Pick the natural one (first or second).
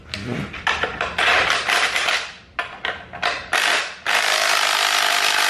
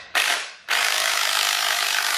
first